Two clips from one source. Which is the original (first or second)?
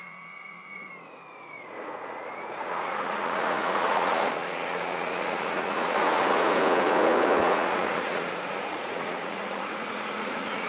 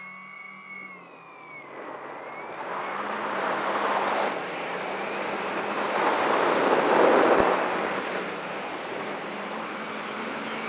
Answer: second